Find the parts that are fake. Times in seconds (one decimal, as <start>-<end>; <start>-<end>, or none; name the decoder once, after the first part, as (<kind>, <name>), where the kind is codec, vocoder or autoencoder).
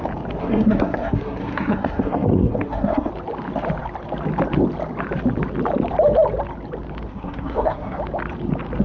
0.4-3.1 (codec, SNAC); 7.1-8.0